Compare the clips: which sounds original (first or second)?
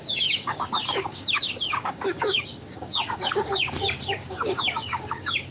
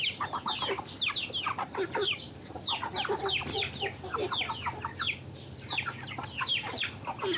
second